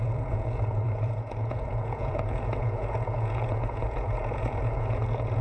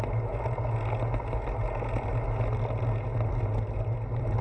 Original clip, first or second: second